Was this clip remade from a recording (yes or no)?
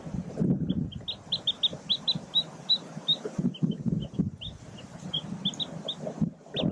no